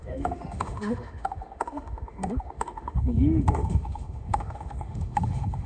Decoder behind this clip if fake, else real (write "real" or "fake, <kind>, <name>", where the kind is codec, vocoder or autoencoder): fake, autoencoder, DAC-VAE